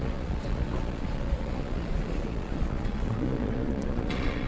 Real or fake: fake